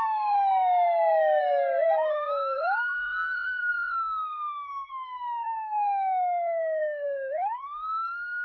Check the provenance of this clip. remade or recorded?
remade